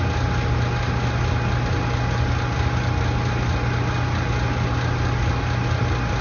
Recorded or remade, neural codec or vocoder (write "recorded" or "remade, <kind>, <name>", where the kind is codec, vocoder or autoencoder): recorded